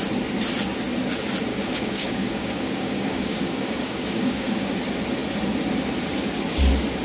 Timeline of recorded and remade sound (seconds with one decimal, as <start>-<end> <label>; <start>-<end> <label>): 0.0-1.5 recorded; 1.5-4.7 remade; 4.7-7.0 recorded